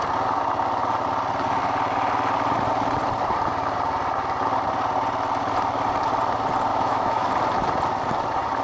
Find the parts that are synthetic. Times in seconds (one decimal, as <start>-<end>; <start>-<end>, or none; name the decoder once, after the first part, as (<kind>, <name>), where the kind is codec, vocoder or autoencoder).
6.7-7.3 (autoencoder, DAC-VAE)